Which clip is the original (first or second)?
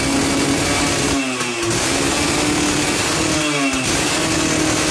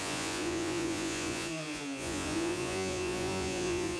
first